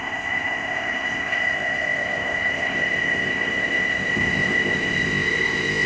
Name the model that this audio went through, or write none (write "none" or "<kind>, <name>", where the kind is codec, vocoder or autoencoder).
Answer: codec, ZipCodec